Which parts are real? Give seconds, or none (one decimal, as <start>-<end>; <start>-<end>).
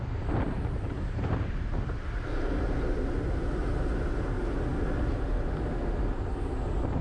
0.0-7.0